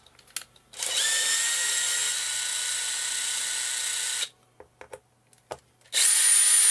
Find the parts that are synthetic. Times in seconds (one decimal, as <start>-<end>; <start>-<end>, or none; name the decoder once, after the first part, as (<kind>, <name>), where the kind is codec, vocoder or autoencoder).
none